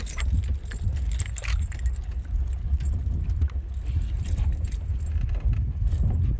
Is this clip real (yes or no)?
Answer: yes